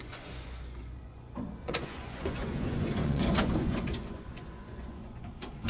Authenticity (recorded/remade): remade